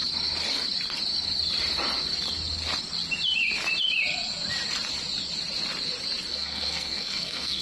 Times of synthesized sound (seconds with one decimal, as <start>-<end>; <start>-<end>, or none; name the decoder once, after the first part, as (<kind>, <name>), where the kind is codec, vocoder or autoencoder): 6.3-7.6 (codec, SNAC)